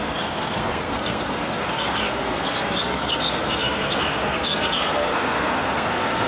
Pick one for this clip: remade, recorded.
remade